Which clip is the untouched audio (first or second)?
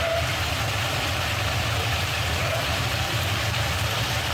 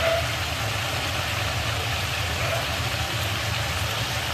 second